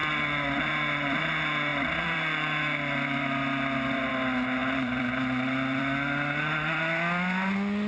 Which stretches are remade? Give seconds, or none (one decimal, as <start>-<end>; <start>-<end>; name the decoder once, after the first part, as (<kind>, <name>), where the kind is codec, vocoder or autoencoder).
0.0-0.7 (vocoder, BigVGAN v2); 1.7-4.1; 4.6-5.8